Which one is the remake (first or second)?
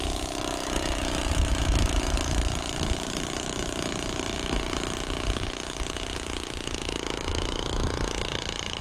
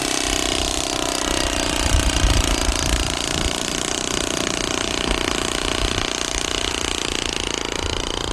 first